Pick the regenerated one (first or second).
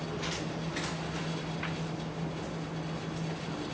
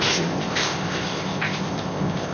second